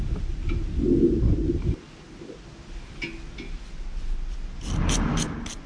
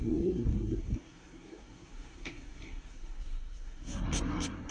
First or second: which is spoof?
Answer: second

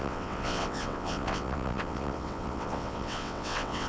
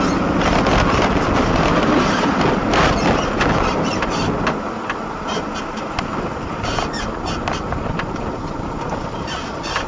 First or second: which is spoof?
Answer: first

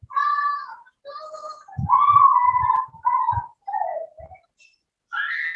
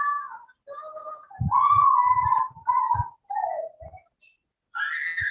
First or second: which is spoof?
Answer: first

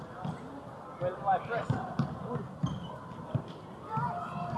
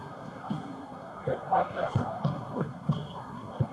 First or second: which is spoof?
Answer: second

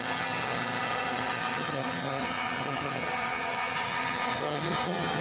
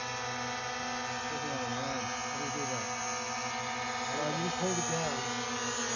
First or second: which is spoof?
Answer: first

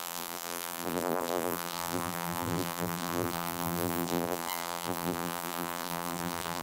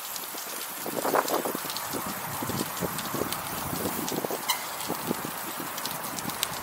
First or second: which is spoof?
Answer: first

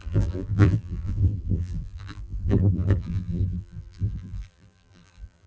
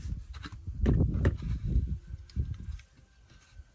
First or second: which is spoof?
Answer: first